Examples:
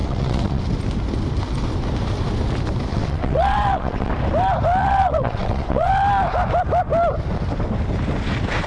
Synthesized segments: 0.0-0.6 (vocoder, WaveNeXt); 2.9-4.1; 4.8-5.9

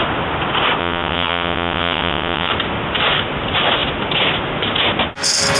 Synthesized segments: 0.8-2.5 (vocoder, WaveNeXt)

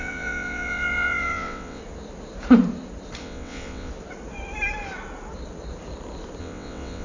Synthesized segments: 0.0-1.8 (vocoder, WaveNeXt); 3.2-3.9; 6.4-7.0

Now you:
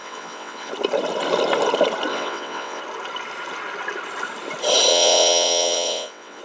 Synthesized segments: 0.0-0.7 (vocoder, WaveNeXt); 2.1-2.8; 4.9-6.4

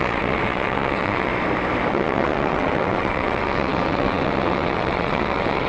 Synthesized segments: 0.0-1.3 (vocoder, WaveNeXt); 1.9-5.7

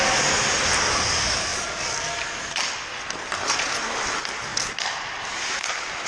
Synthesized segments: none